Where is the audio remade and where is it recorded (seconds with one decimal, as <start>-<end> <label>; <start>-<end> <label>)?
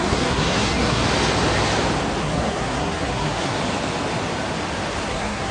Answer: 0.0-1.0 remade; 1.0-2.2 recorded; 2.2-3.6 remade; 3.6-5.1 recorded; 5.1-5.5 remade